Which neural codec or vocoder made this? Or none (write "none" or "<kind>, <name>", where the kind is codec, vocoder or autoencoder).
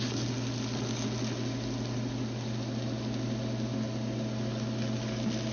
none